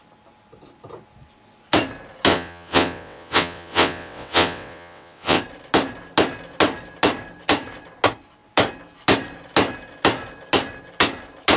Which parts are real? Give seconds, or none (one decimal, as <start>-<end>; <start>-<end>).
0.0-2.3; 5.4-11.6